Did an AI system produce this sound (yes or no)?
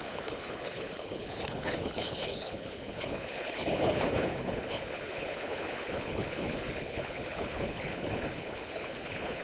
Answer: yes